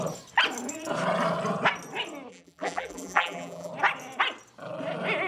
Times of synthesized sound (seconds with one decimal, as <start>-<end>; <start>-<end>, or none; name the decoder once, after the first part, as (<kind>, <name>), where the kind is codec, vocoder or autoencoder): 2.3-3.7 (vocoder, BigVGAN v2)